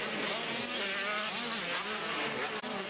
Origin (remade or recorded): recorded